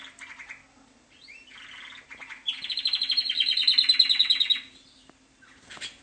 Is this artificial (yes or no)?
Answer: no